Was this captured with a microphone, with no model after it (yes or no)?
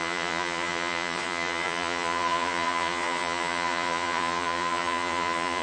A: no